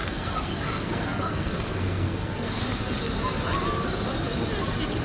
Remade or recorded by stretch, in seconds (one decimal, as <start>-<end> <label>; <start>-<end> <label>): 0.0-2.6 remade; 2.6-5.0 recorded